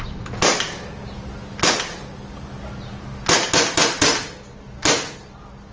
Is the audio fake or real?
real